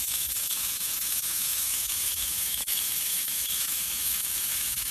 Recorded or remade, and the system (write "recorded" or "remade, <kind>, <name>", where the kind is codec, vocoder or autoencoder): remade, autoencoder, DAC-VAE